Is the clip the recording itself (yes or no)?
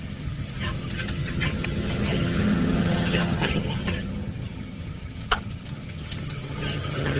no